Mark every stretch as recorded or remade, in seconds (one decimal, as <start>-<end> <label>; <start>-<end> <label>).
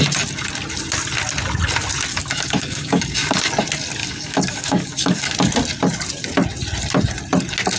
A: 0.0-2.1 recorded; 2.1-3.5 remade; 3.5-4.0 recorded; 4.0-5.3 remade; 5.3-7.8 recorded